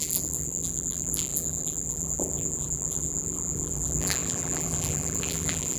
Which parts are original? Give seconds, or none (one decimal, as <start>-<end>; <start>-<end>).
none